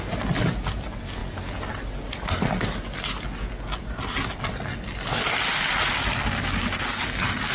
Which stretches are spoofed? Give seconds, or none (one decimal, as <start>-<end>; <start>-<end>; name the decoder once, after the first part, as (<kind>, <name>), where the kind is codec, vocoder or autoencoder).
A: 5.1-5.9 (vocoder, BigVGAN v2)